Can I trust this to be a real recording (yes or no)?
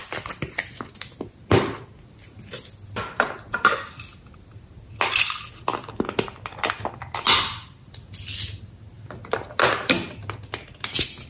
yes